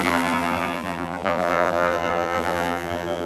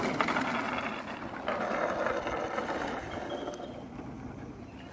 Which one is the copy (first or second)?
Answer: first